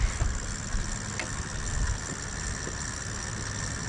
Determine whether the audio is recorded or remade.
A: recorded